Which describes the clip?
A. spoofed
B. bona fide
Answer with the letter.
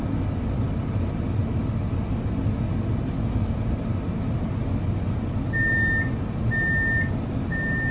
B